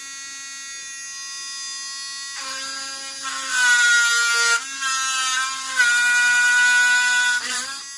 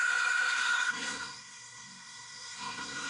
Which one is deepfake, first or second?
second